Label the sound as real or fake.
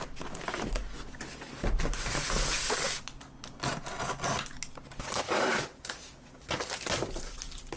real